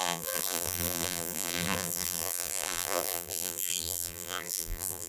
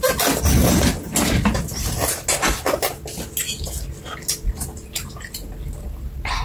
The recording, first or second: second